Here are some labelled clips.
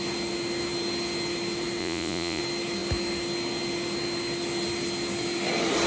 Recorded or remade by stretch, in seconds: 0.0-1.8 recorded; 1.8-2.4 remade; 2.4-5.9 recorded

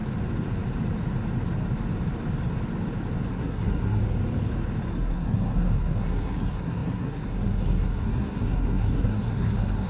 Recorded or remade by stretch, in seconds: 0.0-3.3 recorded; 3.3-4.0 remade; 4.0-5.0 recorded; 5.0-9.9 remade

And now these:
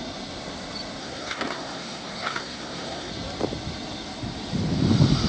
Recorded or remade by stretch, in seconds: 0.0-1.0 recorded; 1.0-3.1 remade; 3.1-5.3 recorded

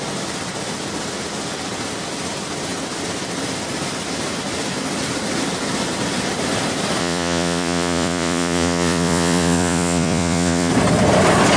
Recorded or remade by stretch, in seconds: 0.0-7.0 recorded; 7.0-10.7 remade; 10.7-11.6 recorded

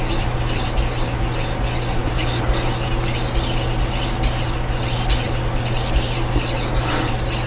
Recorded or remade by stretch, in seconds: 0.0-7.5 recorded